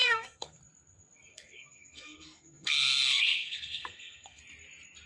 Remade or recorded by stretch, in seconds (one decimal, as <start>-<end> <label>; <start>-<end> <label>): 0.0-0.6 remade; 0.6-1.3 recorded; 1.3-4.4 remade; 4.4-5.1 recorded